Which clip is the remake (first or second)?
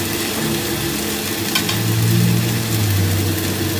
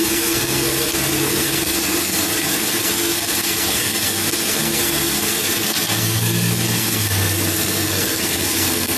second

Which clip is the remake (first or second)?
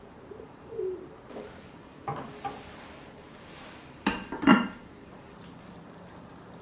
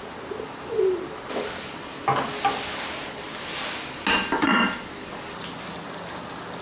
first